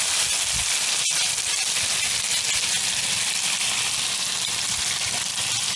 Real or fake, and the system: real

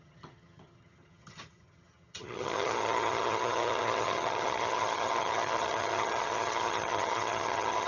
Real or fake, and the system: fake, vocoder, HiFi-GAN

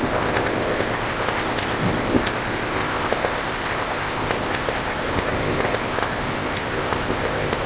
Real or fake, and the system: fake, codec, ZipCodec